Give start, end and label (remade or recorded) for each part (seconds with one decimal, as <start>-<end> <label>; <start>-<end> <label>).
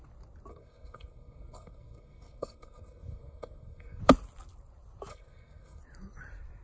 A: 0.0-0.5 recorded; 0.5-4.0 remade; 4.0-5.1 recorded; 5.1-5.8 remade; 5.8-6.6 recorded